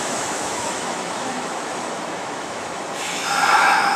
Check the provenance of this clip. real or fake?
fake